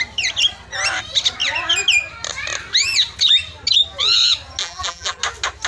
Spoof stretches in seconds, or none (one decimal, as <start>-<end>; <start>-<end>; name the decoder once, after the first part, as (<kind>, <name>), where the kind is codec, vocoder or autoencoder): 4.6-5.2 (vocoder, BigVGAN v2)